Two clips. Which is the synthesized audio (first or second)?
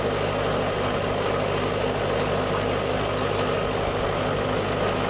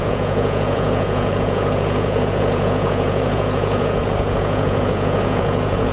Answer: second